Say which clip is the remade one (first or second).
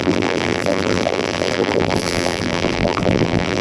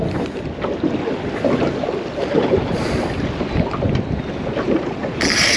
first